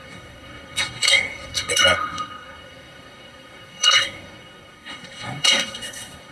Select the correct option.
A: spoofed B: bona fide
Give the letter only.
A